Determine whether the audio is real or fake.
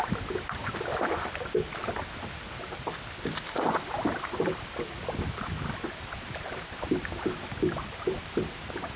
fake